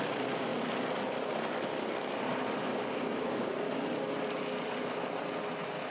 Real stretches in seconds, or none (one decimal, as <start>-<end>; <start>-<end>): 0.0-2.7; 3.5-5.9